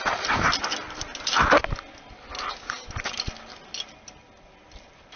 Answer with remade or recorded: recorded